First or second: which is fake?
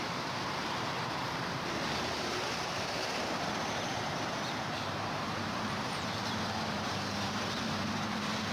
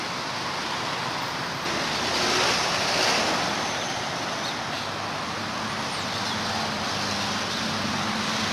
first